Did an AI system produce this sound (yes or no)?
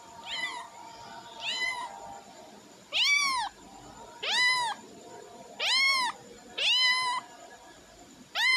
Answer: no